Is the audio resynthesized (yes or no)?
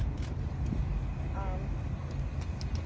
no